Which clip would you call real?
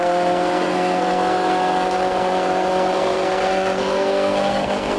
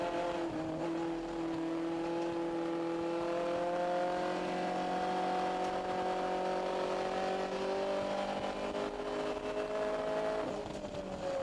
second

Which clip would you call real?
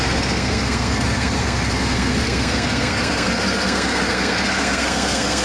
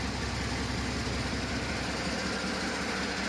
second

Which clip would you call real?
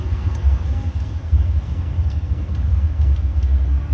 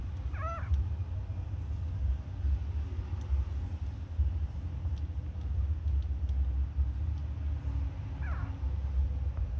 second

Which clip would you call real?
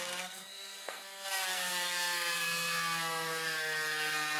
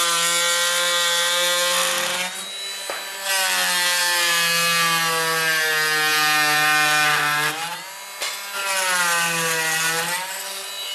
second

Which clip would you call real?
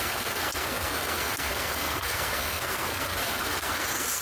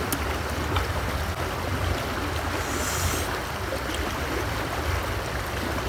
second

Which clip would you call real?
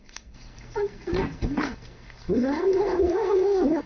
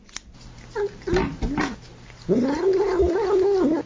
second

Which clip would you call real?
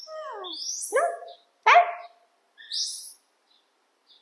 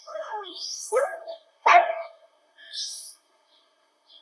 first